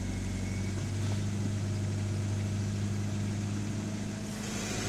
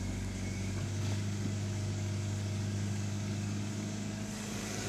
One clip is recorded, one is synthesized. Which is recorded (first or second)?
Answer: first